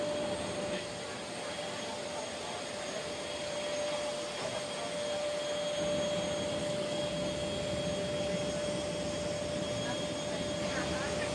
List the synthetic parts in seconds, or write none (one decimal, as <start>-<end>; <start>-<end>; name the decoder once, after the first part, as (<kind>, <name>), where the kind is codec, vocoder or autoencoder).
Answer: 6.6-7.1 (codec, DAC)